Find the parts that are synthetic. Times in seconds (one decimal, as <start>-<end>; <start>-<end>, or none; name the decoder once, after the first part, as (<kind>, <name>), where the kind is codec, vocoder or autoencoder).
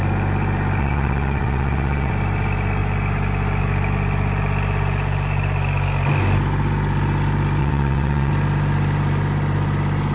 0.8-2.1 (vocoder, WaveNeXt); 7.6-8.3